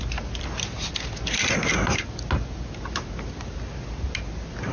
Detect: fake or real real